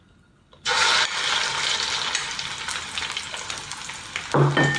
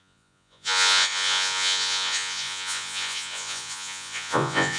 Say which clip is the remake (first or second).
second